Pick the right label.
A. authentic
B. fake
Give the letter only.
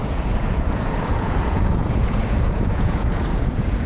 B